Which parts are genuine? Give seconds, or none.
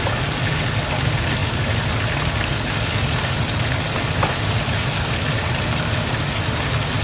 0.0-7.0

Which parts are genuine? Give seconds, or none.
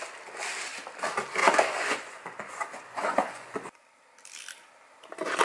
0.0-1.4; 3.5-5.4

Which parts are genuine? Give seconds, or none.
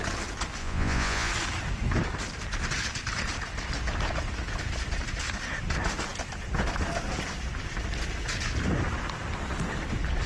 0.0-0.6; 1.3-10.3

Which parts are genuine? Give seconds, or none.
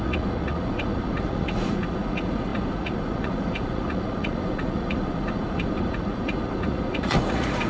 none